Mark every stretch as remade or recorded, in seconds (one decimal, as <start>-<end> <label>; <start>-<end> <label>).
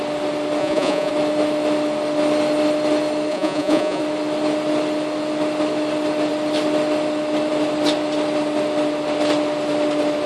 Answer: 0.0-0.6 recorded; 0.6-1.1 remade; 1.1-3.3 recorded; 3.3-4.0 remade; 4.0-10.3 recorded